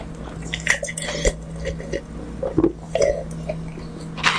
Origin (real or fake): real